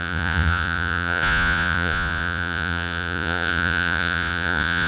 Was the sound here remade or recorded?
remade